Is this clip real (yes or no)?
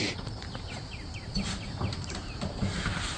no